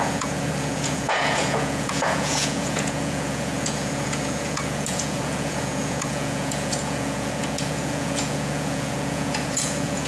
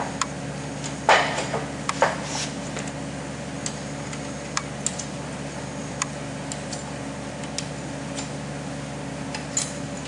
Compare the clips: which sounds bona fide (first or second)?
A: second